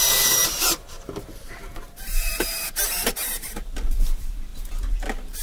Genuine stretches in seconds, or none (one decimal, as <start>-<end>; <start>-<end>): 4.5-5.4